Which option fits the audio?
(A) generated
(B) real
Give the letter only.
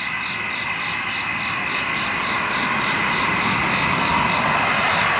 A